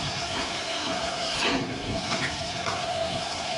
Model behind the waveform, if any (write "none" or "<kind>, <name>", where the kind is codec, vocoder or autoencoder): codec, SNAC